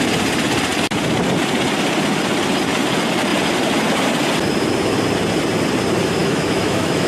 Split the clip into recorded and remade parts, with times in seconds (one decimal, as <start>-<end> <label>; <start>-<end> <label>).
0.0-6.2 recorded; 6.2-7.1 remade